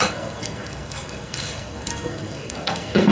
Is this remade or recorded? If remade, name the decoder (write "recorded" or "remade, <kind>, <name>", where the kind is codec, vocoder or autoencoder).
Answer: remade, codec, SNAC